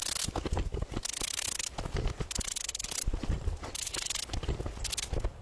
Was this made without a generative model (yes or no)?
yes